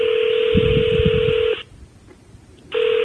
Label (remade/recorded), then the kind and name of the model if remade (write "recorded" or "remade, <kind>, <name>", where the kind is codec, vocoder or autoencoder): recorded